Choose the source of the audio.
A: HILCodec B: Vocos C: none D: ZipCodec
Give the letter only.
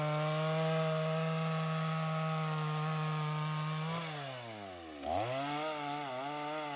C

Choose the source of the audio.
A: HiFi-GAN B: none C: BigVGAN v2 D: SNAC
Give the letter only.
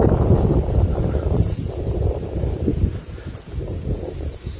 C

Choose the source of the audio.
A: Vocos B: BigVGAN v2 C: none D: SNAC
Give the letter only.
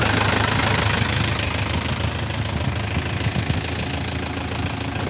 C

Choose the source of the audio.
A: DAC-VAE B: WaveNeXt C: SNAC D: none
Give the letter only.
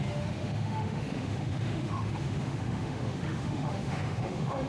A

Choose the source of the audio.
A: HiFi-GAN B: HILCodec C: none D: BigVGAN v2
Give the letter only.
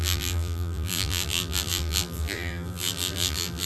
D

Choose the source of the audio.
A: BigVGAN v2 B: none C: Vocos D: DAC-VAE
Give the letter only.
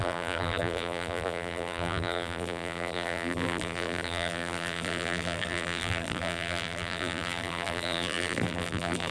A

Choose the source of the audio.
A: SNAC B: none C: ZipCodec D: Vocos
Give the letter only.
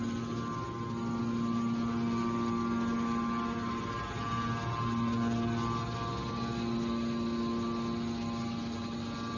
B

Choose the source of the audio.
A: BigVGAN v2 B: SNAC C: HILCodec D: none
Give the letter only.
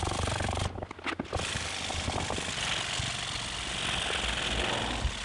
D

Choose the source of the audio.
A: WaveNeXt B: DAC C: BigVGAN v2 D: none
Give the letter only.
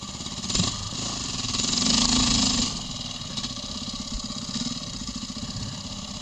D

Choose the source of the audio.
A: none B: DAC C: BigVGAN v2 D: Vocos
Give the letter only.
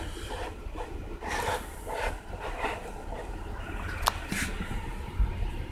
C